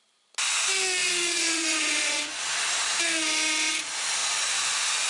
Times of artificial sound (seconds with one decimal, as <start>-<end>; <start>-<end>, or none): 1.0-2.4